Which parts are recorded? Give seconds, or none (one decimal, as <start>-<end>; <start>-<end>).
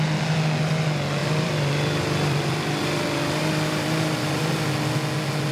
0.0-1.2; 4.5-5.5